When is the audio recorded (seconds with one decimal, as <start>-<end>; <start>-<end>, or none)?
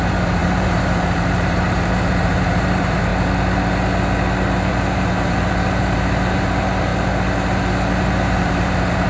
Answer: 3.1-4.7; 6.9-8.0